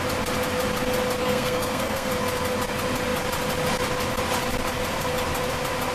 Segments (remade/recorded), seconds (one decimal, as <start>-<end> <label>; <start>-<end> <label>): 0.0-1.2 recorded; 1.2-2.1 remade; 2.1-5.9 recorded